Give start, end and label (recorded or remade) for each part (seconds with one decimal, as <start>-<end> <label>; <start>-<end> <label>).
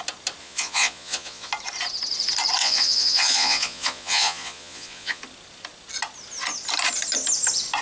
0.0-0.4 recorded; 0.4-1.5 remade; 1.5-2.6 recorded; 2.6-5.2 remade; 5.2-7.8 recorded